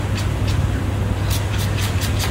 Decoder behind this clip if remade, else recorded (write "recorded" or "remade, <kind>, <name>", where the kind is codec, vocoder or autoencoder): recorded